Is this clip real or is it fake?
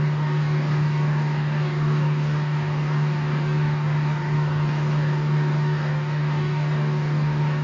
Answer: fake